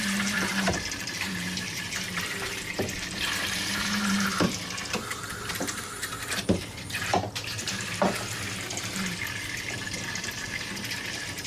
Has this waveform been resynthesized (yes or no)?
yes